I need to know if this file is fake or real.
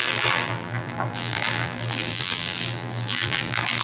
fake